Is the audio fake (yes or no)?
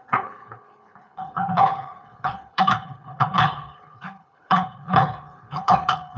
yes